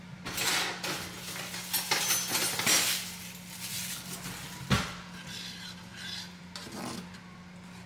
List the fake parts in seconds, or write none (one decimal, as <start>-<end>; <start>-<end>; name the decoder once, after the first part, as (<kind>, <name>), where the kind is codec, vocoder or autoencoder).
none